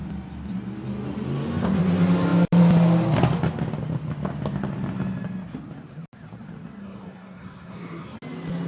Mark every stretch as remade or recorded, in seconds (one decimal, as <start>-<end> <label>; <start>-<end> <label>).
0.0-6.8 recorded; 6.8-8.2 remade; 8.2-8.7 recorded